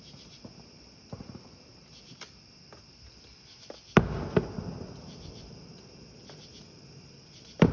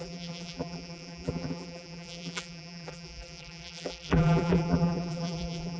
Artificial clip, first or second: second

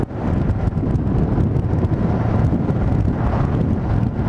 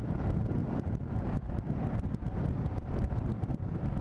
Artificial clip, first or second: second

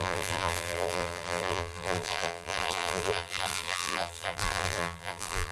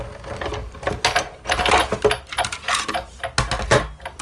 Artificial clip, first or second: first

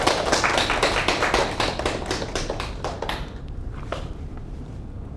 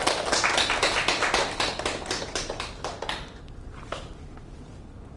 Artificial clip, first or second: first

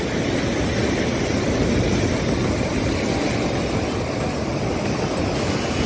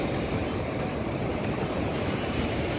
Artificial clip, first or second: second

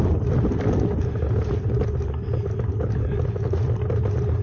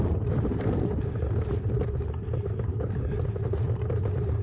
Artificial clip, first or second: second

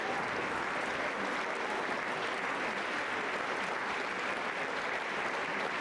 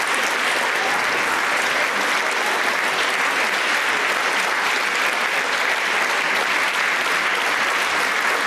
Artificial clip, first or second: first